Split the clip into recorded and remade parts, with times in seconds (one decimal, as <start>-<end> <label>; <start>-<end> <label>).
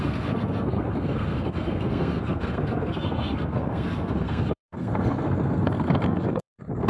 0.0-6.9 remade